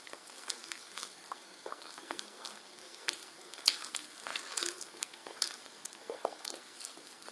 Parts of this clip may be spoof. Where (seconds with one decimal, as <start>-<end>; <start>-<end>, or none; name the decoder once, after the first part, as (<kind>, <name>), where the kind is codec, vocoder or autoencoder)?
0.0-7.3 (codec, SNAC)